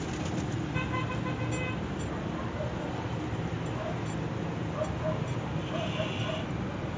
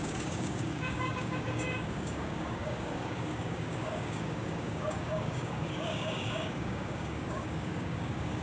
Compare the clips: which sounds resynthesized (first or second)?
second